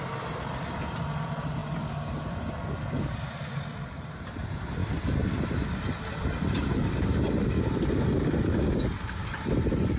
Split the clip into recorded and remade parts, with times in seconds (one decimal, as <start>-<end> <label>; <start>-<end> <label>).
0.0-10.0 recorded